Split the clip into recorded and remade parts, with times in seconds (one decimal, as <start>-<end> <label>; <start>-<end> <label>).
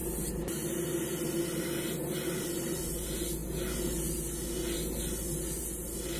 0.0-6.2 recorded